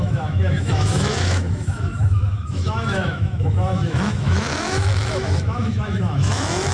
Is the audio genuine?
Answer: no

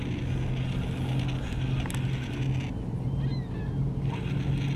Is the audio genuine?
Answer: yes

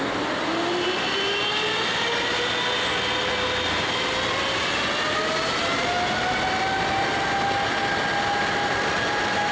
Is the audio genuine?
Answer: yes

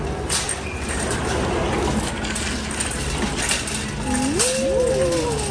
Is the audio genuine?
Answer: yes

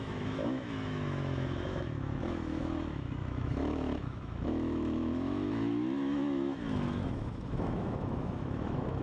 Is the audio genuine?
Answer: no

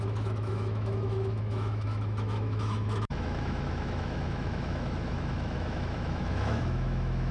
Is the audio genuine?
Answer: no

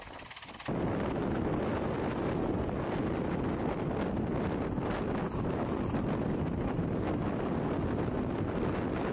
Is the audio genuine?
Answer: yes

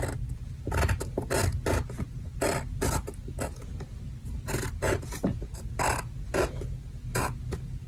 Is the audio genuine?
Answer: yes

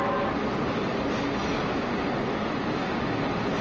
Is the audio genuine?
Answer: yes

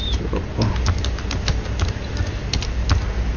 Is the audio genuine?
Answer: yes